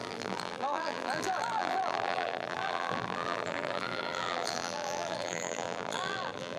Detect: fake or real fake